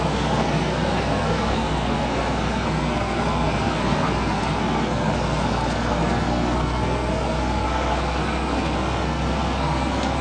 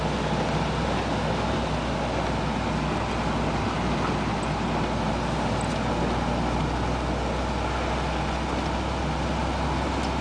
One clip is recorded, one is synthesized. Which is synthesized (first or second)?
first